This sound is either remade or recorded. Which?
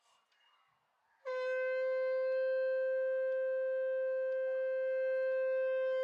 recorded